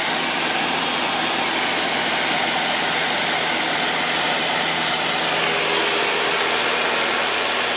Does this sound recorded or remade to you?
recorded